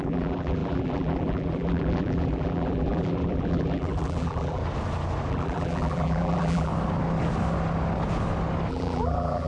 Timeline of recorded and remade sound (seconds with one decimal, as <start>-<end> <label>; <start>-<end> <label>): 0.0-4.6 remade; 4.6-5.3 recorded; 5.3-6.7 remade; 6.7-8.7 recorded; 8.7-9.5 remade